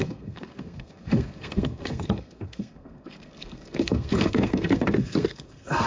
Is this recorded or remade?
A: remade